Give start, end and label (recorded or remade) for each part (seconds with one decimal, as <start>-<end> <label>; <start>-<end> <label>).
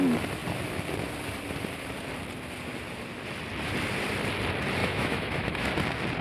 0.0-4.8 recorded; 4.8-5.7 remade; 5.7-6.2 recorded